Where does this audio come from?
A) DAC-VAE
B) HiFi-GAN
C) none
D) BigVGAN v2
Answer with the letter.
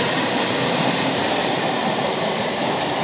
D